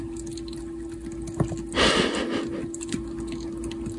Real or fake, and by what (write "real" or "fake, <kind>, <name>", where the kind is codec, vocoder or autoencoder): real